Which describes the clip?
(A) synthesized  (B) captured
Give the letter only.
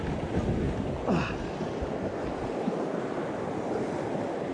B